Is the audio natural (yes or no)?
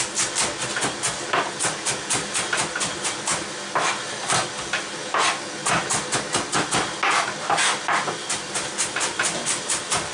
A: yes